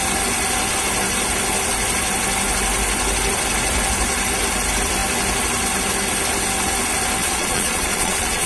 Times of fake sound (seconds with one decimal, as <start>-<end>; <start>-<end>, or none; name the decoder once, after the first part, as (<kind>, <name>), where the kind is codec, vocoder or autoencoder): 7.2-8.5 (vocoder, Vocos)